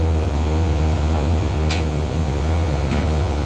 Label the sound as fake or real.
fake